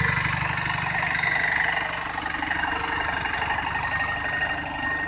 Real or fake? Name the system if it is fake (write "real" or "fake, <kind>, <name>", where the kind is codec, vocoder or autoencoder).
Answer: real